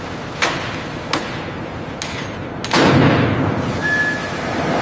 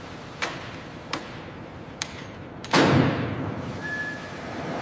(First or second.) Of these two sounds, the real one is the first